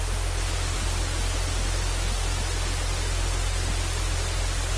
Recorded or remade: recorded